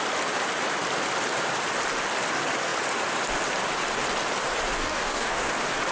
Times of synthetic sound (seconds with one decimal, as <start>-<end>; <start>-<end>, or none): 4.8-5.5